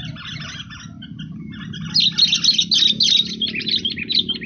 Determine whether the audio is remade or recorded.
recorded